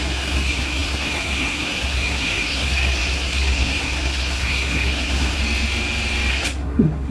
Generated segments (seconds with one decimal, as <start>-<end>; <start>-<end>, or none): 0.0-5.4; 6.3-7.1